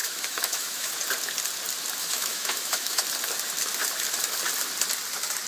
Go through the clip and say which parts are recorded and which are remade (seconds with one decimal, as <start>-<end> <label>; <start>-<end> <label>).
0.0-0.9 remade; 0.9-2.0 recorded; 2.0-3.0 remade; 3.0-5.5 recorded